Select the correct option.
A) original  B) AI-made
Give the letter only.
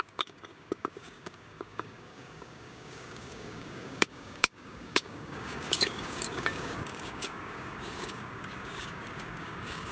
B